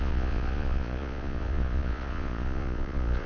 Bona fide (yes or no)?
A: no